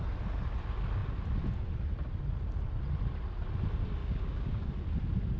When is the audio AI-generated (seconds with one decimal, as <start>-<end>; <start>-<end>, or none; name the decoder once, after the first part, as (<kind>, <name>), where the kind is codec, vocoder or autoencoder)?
4.0-4.7 (codec, DAC)